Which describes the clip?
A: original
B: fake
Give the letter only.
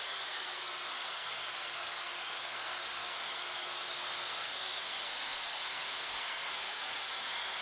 B